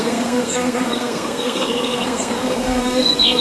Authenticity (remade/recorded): remade